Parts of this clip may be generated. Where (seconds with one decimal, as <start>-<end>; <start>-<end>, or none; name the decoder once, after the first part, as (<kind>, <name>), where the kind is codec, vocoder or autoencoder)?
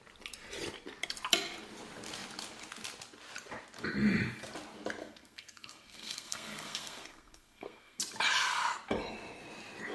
5.0-8.0 (codec, SNAC)